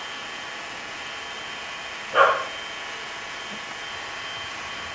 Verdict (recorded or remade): recorded